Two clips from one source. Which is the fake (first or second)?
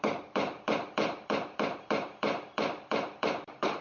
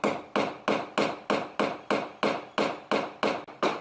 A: first